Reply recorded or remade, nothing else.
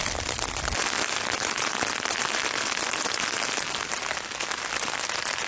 recorded